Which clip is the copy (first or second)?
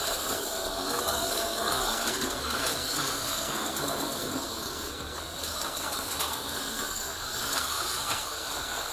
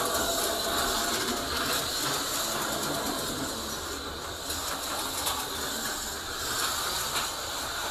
first